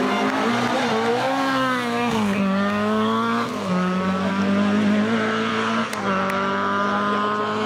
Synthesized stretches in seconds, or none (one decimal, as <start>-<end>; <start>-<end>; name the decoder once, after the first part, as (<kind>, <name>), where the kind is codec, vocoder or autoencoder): 1.1-4.3 (codec, DAC); 5.5-6.0